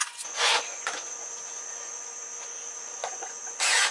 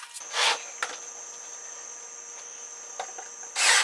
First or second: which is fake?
first